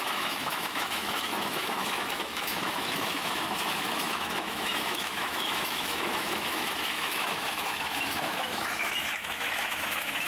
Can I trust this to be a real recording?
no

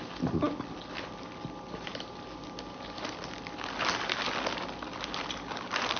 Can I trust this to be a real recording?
yes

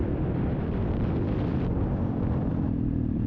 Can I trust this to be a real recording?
no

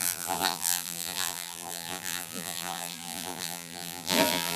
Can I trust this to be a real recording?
no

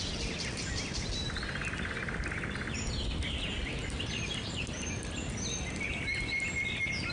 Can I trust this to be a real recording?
yes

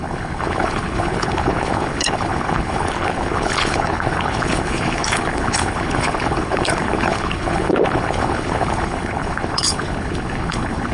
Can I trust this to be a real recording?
no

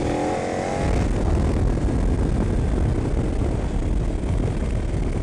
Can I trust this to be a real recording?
yes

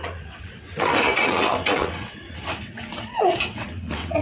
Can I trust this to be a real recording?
no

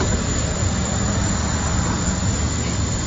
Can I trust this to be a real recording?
yes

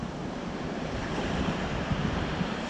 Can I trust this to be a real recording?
no